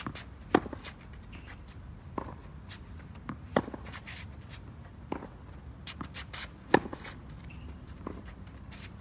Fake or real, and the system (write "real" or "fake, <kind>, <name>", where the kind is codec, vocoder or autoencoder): real